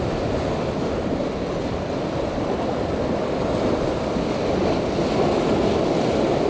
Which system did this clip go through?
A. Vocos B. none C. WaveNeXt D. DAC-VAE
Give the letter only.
B